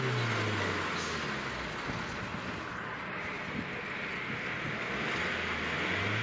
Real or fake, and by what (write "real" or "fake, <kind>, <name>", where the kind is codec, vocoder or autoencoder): real